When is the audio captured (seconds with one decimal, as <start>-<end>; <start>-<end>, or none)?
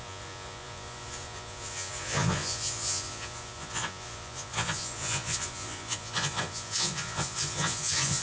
none